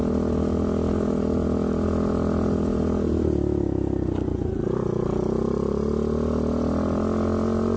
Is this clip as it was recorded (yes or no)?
yes